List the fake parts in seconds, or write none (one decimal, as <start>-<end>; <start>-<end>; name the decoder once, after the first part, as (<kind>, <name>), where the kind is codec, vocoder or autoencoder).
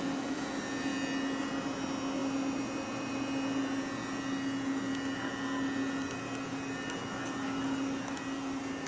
none